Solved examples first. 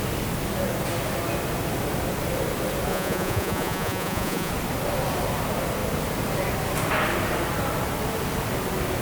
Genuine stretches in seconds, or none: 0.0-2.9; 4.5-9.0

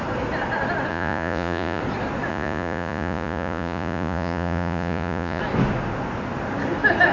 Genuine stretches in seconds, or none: 0.0-0.9; 1.8-2.3; 5.4-7.1

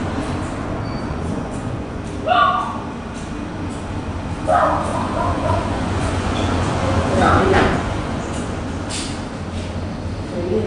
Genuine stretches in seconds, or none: 0.0-0.6; 2.0-4.9; 8.7-10.7